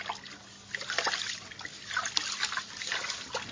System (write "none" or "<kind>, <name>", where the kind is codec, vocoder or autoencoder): none